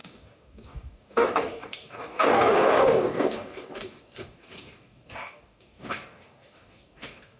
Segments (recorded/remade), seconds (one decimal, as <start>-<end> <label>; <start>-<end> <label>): 0.0-7.4 remade